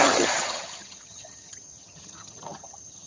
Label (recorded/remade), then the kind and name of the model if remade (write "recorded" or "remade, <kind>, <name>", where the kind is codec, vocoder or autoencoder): remade, vocoder, HiFi-GAN